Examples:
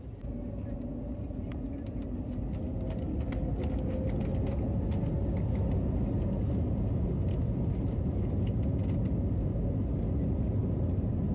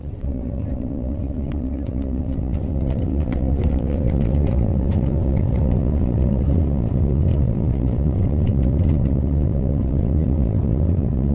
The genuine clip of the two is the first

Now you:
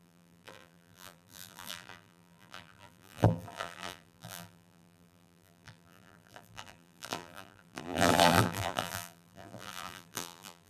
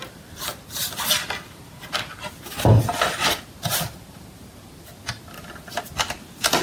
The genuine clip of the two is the second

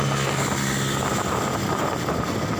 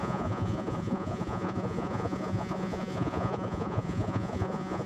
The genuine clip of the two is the first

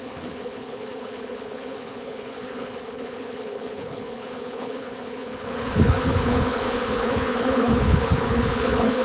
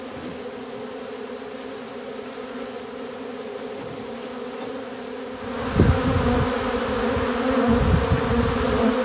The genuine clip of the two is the second